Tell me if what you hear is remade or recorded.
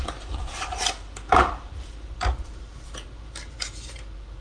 remade